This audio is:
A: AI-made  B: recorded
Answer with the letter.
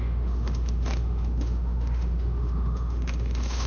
A